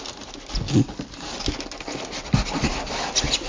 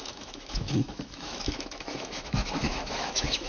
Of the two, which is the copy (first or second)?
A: second